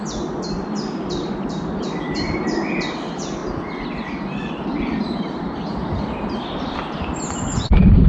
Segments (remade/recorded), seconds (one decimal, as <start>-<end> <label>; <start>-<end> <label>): 0.0-3.4 remade; 3.4-4.5 recorded; 4.5-8.1 remade